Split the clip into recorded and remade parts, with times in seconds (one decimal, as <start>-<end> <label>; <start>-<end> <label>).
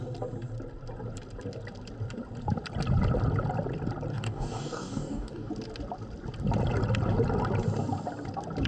0.0-4.1 recorded; 4.1-5.5 remade; 5.5-8.7 recorded